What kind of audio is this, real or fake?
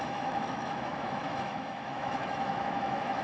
fake